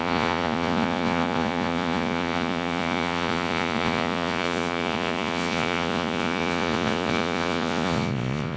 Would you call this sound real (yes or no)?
no